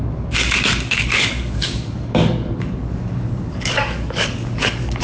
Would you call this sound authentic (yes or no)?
no